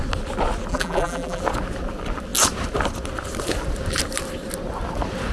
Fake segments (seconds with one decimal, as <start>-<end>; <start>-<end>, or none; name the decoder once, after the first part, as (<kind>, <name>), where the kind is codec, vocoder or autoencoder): 0.7-1.4 (vocoder, BigVGAN v2)